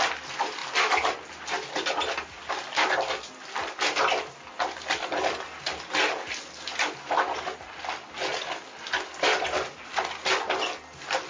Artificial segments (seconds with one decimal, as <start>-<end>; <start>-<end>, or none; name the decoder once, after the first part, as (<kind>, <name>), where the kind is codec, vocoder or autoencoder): none